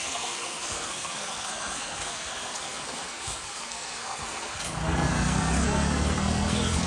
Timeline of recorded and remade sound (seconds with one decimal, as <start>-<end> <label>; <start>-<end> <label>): 0.0-6.9 remade